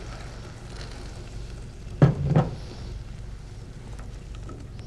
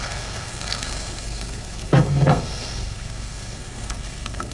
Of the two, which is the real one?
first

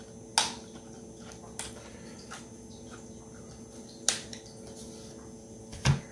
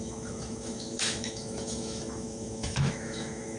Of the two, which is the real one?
first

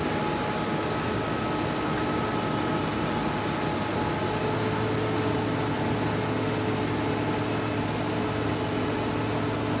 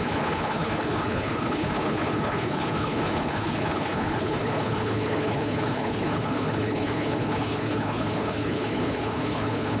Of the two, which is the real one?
first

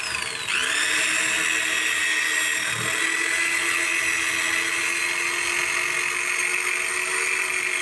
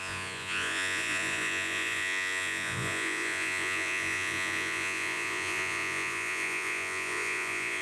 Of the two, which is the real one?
first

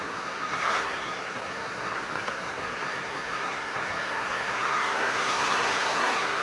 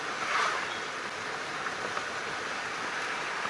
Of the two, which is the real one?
second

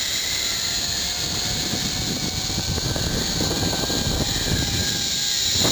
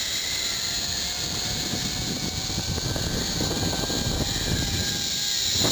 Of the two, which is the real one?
second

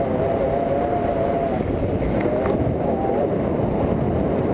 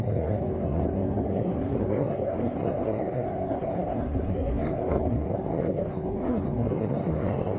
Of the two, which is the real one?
first